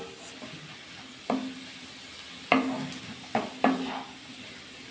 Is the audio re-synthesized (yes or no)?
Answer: no